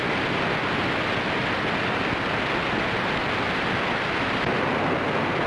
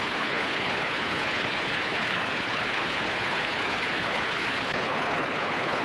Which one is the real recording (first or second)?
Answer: first